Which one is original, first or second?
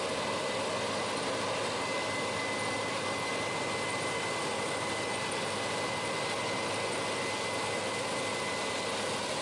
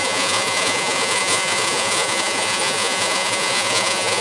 first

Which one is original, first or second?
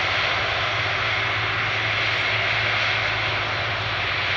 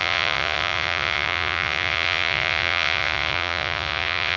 first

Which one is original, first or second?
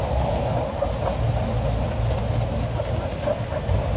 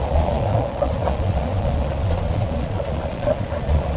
first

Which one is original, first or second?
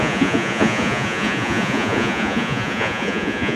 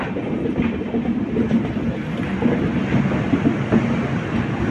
second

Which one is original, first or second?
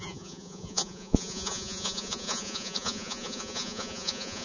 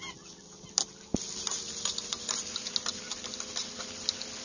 second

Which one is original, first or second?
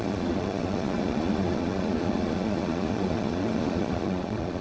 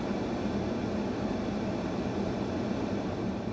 second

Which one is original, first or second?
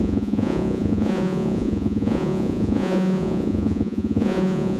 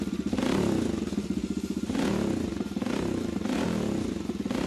second